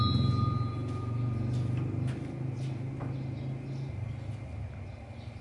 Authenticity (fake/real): real